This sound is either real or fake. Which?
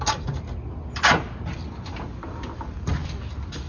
real